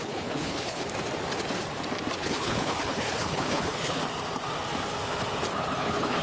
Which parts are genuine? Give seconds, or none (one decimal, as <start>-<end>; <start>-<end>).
0.8-2.2; 4.0-5.5